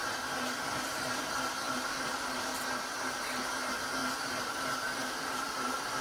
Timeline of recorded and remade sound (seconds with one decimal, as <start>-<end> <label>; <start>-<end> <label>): 0.0-0.8 recorded; 0.8-2.5 remade; 2.5-3.0 recorded; 3.0-6.0 remade